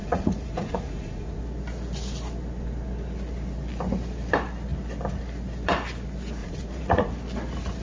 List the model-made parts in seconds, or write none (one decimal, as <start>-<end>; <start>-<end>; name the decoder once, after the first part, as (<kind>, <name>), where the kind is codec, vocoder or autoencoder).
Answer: 0.0-1.4 (vocoder, Vocos); 6.4-7.1